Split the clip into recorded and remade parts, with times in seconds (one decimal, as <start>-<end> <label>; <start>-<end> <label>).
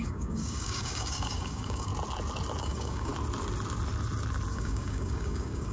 0.0-1.9 remade; 1.9-2.6 recorded; 2.6-3.1 remade; 3.1-4.5 recorded; 4.5-5.7 remade